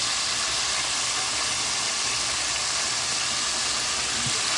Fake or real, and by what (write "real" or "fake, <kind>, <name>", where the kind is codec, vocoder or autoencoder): real